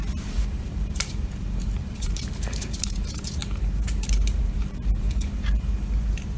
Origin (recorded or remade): remade